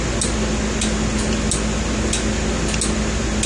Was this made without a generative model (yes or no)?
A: yes